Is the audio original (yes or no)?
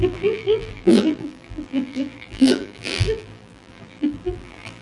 no